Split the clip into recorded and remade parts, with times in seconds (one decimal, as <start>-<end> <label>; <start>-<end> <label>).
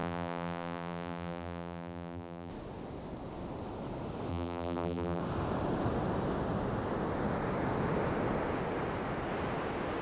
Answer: 0.0-2.5 remade; 2.5-4.3 recorded; 4.3-5.2 remade; 5.2-10.0 recorded